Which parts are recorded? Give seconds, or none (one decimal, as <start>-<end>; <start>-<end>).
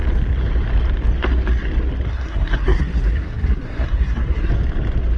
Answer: 0.0-2.1; 4.5-5.2